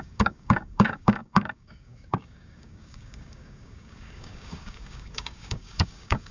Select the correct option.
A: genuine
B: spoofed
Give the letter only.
B